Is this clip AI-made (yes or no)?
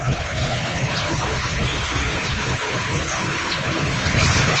yes